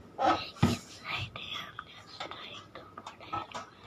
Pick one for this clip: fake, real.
real